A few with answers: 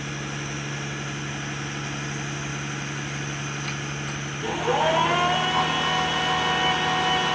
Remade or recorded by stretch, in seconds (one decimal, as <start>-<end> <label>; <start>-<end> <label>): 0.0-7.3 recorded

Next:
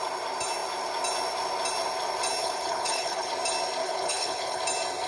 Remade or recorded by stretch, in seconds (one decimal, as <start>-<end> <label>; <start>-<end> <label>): 0.0-2.4 recorded; 2.4-3.3 remade; 3.3-3.8 recorded; 3.8-4.6 remade; 4.6-5.1 recorded

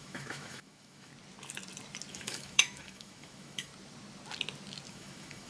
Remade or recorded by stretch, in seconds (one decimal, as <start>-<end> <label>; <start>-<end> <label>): 0.0-1.1 remade; 1.1-2.1 recorded; 2.1-3.7 remade; 3.7-4.9 recorded; 4.9-5.5 remade

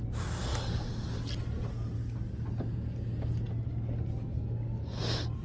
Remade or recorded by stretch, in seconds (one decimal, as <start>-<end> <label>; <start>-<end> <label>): 0.0-5.4 recorded

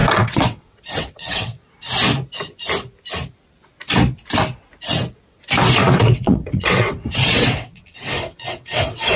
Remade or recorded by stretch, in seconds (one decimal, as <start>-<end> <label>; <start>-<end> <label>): 0.0-1.6 remade; 1.6-5.8 recorded; 5.8-9.2 remade